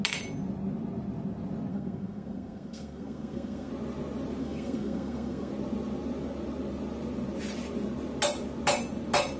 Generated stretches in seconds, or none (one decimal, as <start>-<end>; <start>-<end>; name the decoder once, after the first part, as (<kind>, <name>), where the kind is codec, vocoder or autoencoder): 1.7-3.7 (codec, SNAC); 4.4-5.5